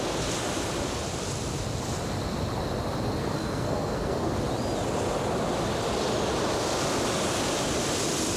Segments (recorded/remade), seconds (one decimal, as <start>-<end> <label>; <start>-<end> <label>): 0.0-3.2 recorded; 3.2-4.3 remade; 4.3-8.4 recorded